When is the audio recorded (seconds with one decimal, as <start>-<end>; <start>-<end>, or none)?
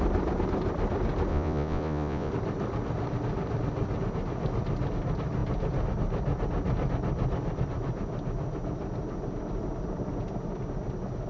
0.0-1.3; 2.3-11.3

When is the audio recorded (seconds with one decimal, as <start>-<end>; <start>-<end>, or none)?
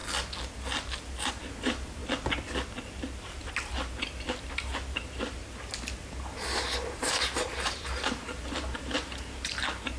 0.0-1.3; 2.0-4.6; 5.4-6.0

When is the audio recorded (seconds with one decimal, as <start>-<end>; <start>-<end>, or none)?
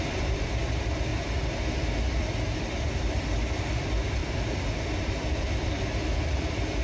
1.1-2.6